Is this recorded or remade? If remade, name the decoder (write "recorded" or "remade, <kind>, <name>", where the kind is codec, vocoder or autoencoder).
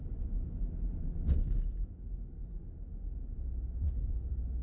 recorded